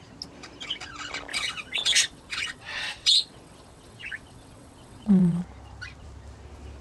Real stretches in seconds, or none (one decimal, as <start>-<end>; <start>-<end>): 0.0-1.3; 5.4-6.8